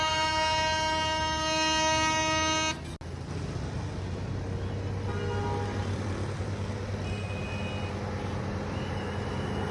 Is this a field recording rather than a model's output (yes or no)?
yes